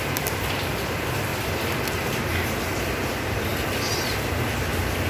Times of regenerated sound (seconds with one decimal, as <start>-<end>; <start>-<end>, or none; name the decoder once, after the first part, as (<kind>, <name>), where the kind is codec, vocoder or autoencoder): 1.3-3.1 (vocoder, BigVGAN v2); 3.5-4.1